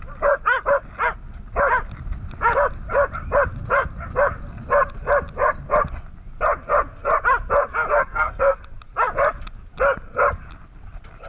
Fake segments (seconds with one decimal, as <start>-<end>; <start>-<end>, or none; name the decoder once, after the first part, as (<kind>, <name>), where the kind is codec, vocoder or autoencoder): 7.9-8.6 (codec, SNAC)